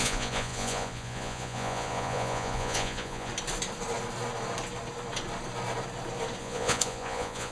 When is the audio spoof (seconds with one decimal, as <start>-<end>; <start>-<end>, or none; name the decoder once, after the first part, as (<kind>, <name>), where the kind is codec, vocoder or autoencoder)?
0.0-3.3 (vocoder, Vocos); 6.4-7.5